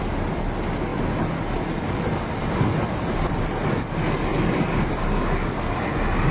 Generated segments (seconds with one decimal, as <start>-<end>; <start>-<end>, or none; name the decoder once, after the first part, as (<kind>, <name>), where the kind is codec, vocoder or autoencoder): none

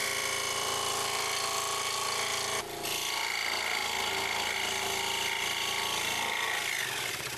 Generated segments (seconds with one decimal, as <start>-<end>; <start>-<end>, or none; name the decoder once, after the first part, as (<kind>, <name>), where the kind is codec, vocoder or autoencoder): 0.0-3.8 (vocoder, BigVGAN v2); 6.2-7.4

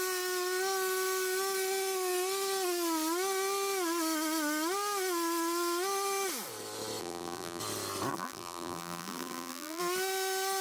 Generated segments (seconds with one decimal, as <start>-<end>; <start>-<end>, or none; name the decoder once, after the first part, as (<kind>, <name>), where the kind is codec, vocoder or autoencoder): 7.0-7.6 (vocoder, BigVGAN v2); 8.1-9.8

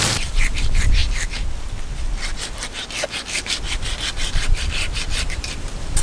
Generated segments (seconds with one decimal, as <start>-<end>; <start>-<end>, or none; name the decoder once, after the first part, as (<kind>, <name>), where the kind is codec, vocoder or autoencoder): 0.0-1.0 (vocoder, BigVGAN v2); 4.1-6.0

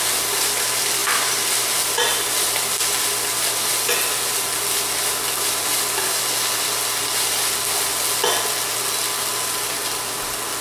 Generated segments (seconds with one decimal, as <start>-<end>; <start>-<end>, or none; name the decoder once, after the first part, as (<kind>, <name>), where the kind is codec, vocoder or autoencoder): 1.0-1.6 (vocoder, BigVGAN v2)

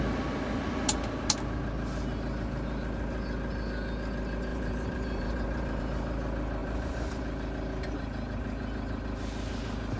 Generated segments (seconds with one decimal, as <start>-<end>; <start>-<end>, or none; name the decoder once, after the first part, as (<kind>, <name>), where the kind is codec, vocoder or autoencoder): 4.5-5.8 (vocoder, BigVGAN v2); 6.6-7.2

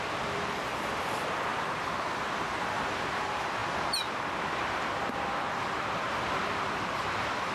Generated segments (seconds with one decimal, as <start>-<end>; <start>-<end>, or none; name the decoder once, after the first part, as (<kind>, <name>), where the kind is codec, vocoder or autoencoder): 1.5-2.2 (vocoder, BigVGAN v2)